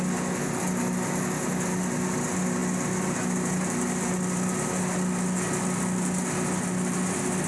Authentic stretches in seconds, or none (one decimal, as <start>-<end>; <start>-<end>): 0.0-7.5